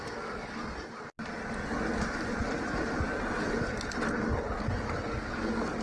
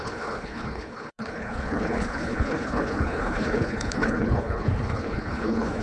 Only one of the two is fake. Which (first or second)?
second